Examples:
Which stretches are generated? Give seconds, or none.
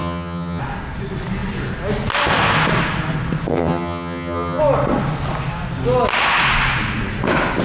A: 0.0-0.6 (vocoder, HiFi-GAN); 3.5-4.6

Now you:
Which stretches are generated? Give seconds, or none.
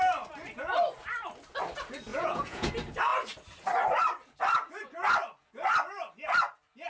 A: 2.1-2.7 (vocoder, Vocos)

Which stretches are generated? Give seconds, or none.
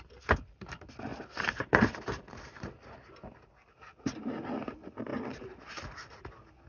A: 0.0-1.1 (vocoder, BigVGAN v2); 4.2-5.1; 5.7-6.7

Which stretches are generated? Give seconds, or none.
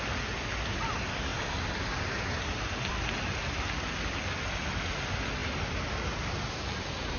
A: none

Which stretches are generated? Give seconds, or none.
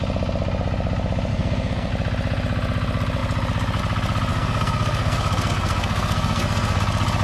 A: 1.3-1.9 (codec, SNAC); 4.3-6.8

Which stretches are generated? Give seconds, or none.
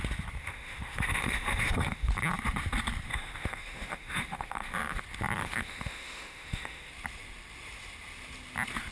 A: 0.4-2.1 (autoencoder, DAC-VAE); 3.1-5.0; 5.4-6.9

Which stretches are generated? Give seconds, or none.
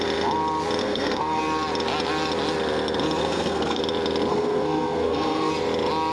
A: 0.8-1.4 (codec, SNAC); 3.2-3.8; 4.3-5.5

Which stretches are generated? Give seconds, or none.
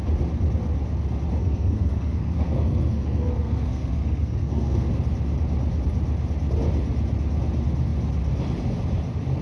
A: 1.4-4.9 (codec, SNAC)